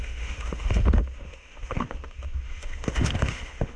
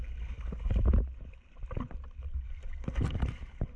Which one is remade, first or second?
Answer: first